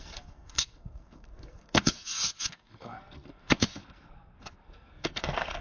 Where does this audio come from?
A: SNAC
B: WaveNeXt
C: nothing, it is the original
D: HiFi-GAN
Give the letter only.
A